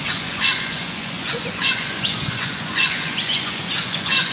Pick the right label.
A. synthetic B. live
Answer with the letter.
A